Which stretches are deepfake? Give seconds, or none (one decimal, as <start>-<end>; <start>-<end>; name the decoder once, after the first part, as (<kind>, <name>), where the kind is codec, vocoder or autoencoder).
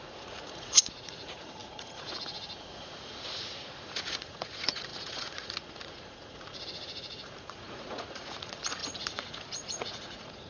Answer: 0.0-10.5 (vocoder, Vocos)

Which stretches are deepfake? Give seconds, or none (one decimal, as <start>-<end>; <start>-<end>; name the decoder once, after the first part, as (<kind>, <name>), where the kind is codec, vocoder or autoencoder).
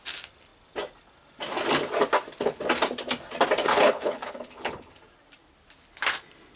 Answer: 3.7-4.9 (codec, HILCodec)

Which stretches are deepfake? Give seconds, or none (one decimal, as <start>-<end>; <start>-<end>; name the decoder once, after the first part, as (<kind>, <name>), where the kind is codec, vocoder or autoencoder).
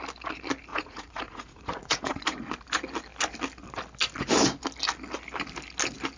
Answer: 0.7-2.2 (vocoder, Vocos)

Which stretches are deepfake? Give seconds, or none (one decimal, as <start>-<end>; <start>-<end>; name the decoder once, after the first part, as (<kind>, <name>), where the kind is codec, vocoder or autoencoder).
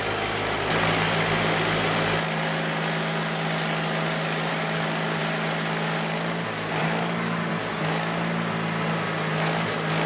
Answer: 4.5-5.2 (codec, DAC); 6.8-7.5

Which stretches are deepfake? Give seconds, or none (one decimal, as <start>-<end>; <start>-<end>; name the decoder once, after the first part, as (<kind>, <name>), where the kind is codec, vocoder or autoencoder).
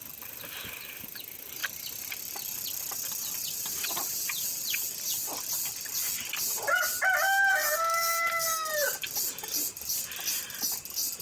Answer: 7.5-8.7 (codec, SNAC)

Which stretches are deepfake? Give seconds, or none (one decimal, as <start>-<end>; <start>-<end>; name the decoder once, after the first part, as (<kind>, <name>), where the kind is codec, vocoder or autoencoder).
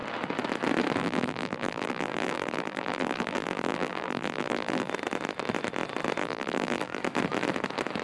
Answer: 1.0-4.9 (vocoder, BigVGAN v2); 6.2-7.0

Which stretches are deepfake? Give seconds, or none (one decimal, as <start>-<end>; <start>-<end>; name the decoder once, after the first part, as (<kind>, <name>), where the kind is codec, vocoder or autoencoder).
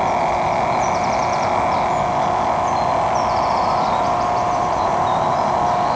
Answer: 4.6-5.3 (vocoder, BigVGAN v2)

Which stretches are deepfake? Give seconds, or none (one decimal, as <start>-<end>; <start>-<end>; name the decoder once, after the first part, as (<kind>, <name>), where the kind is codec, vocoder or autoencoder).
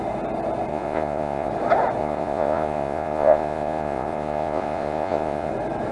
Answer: 0.7-1.5 (vocoder, Vocos); 2.0-5.5